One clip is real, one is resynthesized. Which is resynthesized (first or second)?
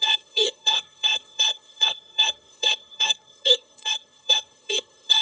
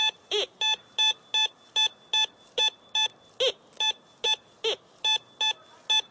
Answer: first